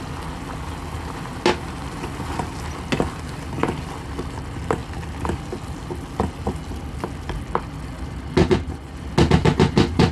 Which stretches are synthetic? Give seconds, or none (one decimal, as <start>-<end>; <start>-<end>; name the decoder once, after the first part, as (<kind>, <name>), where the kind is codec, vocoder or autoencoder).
8.4-9.0 (vocoder, Vocos); 9.4-10.1